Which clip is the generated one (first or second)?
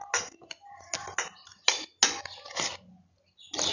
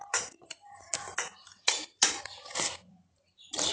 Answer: second